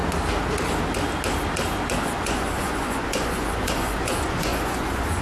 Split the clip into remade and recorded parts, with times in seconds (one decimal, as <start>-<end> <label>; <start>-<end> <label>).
0.0-2.0 recorded; 2.0-5.2 remade